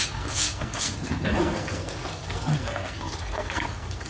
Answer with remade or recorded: remade